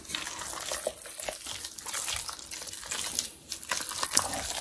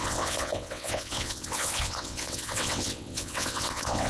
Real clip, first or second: first